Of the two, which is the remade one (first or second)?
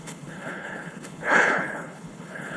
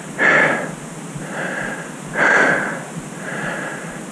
first